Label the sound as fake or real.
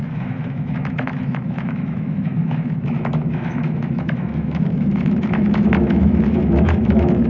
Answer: fake